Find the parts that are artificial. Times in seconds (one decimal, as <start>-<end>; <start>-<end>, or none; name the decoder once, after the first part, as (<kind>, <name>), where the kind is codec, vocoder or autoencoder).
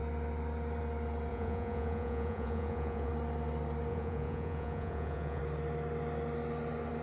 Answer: 1.3-3.1 (vocoder, Vocos); 3.9-5.4